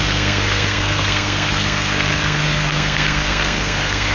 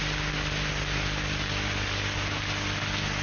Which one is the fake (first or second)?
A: first